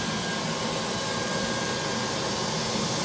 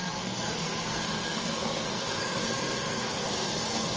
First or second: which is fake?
second